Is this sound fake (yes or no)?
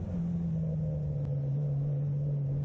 no